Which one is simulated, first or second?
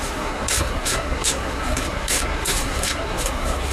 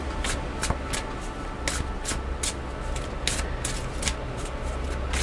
first